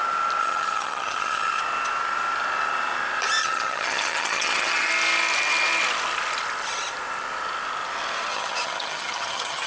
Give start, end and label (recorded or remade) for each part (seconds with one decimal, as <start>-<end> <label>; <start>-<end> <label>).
0.0-0.4 recorded; 0.4-1.6 remade; 1.6-3.4 recorded; 3.4-4.9 remade; 4.9-8.3 recorded; 8.3-9.7 remade